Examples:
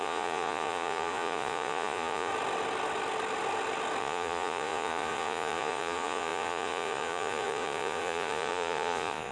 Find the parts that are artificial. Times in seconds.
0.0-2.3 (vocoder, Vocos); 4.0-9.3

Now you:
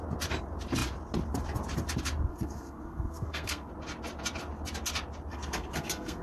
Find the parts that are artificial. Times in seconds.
2.3-3.7 (codec, SNAC); 5.3-6.2

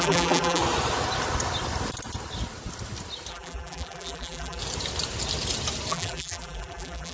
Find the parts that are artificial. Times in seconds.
0.0-0.6 (vocoder, BigVGAN v2); 3.3-4.6; 5.9-7.1

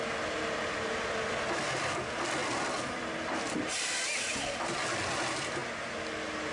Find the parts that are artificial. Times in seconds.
none

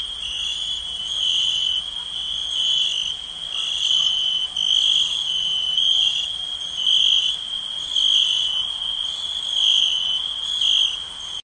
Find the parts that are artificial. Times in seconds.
0.0-1.0 (vocoder, BigVGAN v2); 5.7-6.6

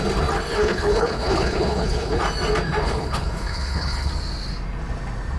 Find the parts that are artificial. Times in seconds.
0.5-2.2 (codec, HILCodec); 2.8-4.1